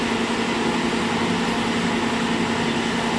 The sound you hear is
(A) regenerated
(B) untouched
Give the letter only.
B